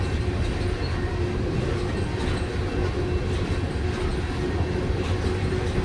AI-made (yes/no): no